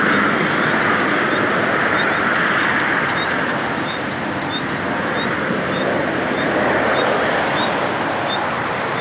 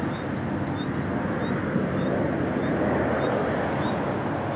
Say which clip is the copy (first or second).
first